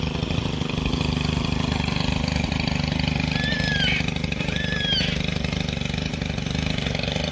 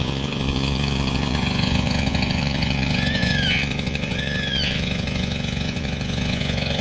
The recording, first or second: first